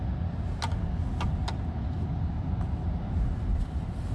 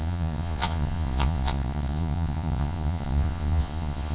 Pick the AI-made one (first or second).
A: second